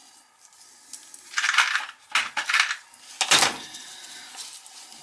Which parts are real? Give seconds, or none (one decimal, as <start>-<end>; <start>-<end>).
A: 0.0-5.0

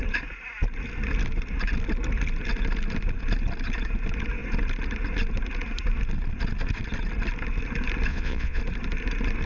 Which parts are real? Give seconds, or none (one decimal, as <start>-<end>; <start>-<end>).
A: 0.0-8.1; 8.6-9.5

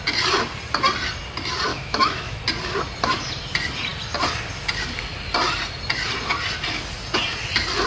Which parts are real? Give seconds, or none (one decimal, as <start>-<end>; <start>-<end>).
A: 0.0-1.7; 2.4-7.9

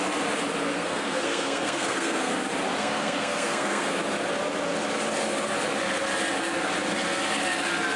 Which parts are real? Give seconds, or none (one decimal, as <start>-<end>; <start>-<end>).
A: 0.0-0.7; 2.3-2.8; 4.0-8.0

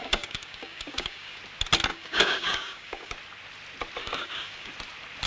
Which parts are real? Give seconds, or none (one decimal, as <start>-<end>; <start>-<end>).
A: 1.4-1.9; 3.1-4.0; 4.7-5.3